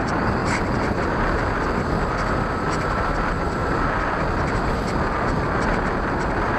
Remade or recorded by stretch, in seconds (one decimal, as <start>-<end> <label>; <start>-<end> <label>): 0.0-0.4 recorded; 0.4-1.5 remade; 1.5-3.6 recorded; 3.6-4.1 remade; 4.1-6.6 recorded